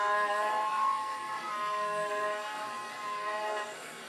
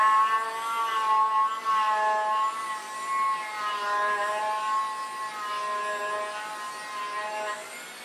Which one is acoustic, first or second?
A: second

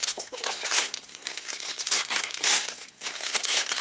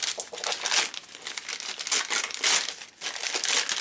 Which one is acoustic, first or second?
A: second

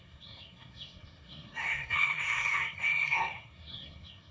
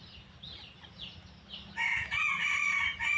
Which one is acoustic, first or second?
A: second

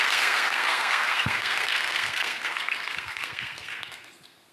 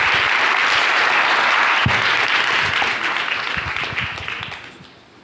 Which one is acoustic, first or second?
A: second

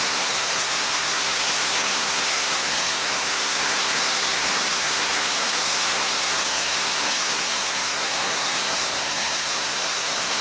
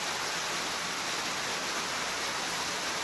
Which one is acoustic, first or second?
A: second